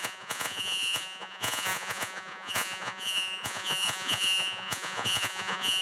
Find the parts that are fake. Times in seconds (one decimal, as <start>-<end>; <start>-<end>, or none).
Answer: 0.0-5.8